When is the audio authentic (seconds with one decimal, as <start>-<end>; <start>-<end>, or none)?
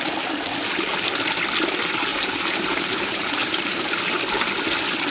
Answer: 0.0-2.1; 4.2-5.1